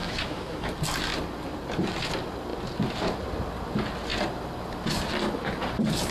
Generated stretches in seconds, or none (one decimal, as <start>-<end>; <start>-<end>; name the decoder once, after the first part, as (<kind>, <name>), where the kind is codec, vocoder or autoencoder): 0.0-0.7 (autoencoder, DAC-VAE)